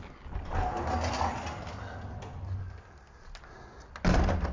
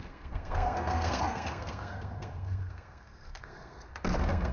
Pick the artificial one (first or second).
second